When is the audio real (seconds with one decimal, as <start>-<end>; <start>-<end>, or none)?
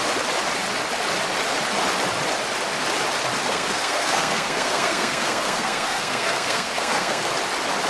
0.0-3.5; 7.3-7.9